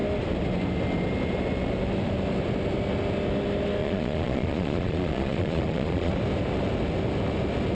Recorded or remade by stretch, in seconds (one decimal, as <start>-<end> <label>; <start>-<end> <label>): 0.0-3.8 recorded; 3.8-6.1 remade; 6.1-7.7 recorded